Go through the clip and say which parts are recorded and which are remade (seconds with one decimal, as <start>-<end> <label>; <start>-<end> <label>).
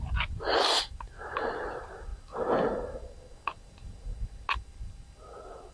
0.0-5.7 recorded